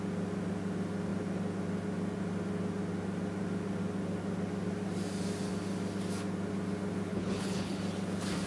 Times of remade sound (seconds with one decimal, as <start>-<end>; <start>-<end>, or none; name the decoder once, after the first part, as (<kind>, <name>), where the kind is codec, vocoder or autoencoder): 7.1-7.8 (codec, HILCodec)